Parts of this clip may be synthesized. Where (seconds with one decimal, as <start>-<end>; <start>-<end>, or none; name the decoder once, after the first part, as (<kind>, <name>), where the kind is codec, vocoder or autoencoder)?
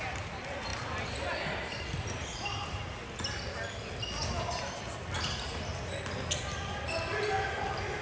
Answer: none